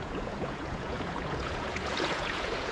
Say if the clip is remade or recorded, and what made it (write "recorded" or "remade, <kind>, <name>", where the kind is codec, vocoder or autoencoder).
remade, vocoder, Vocos